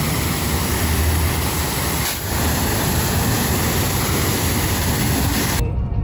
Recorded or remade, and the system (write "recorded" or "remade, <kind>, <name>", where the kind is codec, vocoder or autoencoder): remade, vocoder, BigVGAN v2